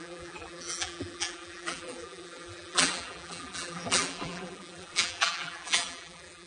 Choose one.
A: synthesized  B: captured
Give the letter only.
A